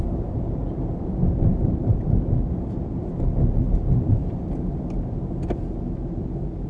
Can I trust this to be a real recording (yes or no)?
no